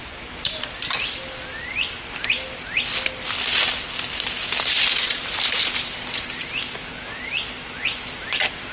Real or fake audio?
real